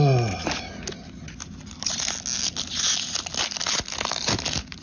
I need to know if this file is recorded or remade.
recorded